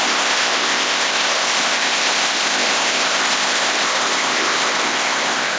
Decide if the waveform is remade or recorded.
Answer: remade